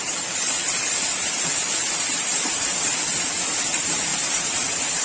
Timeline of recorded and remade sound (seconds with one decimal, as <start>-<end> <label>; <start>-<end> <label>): 0.0-5.0 recorded